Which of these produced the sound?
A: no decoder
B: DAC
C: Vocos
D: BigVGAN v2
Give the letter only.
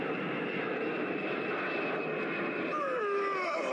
A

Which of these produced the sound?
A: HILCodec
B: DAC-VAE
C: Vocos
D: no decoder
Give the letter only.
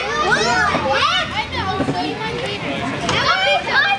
D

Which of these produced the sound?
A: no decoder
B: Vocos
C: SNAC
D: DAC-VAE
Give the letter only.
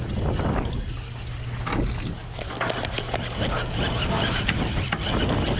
A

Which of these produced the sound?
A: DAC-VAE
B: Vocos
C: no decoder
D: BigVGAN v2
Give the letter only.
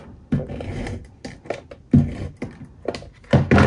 C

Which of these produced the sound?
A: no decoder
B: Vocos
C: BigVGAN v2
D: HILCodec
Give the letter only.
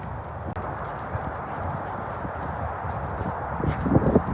A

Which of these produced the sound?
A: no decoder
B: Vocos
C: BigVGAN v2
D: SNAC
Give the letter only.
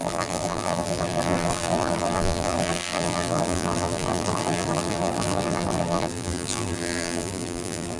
C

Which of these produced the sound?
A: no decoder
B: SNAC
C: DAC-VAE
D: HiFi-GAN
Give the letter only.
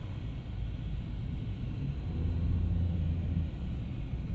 A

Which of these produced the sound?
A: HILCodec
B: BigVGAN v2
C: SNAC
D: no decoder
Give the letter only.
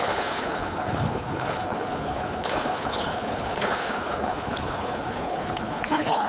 A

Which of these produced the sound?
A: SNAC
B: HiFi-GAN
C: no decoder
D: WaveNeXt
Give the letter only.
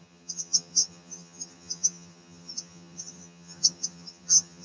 B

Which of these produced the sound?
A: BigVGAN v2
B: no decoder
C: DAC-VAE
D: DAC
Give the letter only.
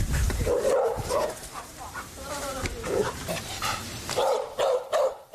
A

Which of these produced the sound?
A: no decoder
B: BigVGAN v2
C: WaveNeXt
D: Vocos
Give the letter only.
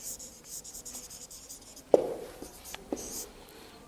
B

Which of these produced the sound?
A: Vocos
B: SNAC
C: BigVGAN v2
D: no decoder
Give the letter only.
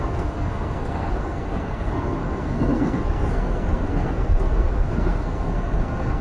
B